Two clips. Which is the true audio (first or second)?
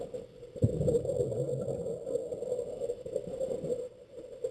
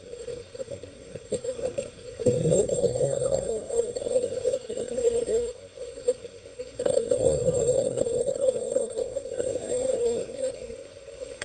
first